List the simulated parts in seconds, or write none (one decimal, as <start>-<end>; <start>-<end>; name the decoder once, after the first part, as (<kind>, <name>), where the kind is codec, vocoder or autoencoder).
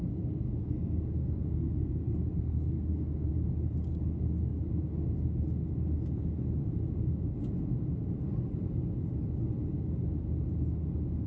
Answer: 0.6-3.3 (codec, SNAC)